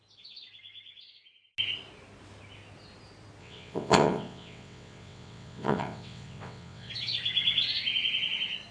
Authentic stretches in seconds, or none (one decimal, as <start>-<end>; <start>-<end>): 0.0-3.4; 6.9-8.7